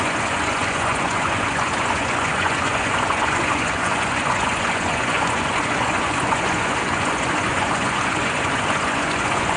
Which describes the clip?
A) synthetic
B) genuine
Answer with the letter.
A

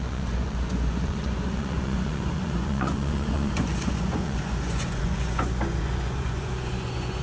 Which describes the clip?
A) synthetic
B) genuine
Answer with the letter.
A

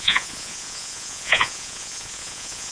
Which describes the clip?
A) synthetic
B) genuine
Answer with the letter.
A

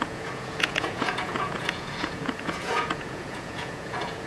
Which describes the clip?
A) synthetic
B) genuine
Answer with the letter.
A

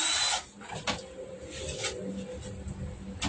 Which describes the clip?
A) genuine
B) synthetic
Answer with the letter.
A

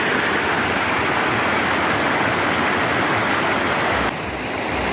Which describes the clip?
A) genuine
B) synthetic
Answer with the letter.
A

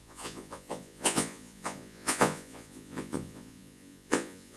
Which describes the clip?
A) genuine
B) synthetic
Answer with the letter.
B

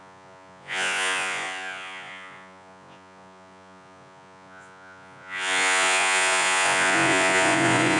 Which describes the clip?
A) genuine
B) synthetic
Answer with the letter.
B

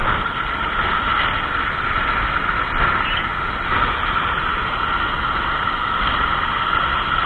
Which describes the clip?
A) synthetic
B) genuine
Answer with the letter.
B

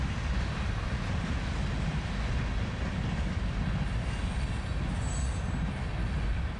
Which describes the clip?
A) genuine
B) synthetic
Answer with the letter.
A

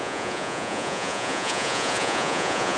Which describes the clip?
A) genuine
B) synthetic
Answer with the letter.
B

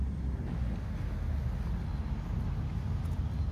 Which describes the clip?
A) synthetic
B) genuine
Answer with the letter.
B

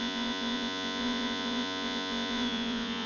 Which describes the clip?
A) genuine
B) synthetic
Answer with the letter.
B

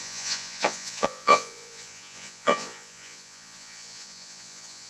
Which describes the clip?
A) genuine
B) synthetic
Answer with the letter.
B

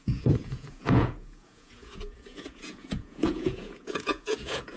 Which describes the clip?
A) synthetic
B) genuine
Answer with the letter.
A